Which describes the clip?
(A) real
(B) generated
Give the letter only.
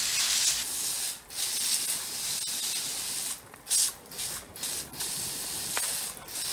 A